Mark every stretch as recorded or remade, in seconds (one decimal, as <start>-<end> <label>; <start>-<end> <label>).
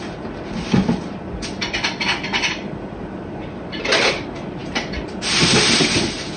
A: 0.0-2.6 recorded; 2.6-3.2 remade; 3.2-4.6 recorded; 4.6-5.5 remade; 5.5-6.4 recorded